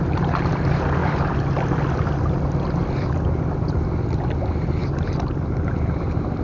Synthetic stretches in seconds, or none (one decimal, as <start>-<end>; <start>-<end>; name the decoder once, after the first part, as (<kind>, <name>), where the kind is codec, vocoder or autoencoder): none